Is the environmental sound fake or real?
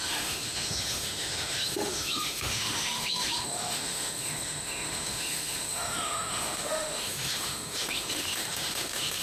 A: fake